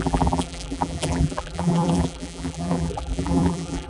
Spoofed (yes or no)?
yes